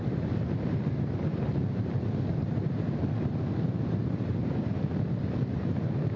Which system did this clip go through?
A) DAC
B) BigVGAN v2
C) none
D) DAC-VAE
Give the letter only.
B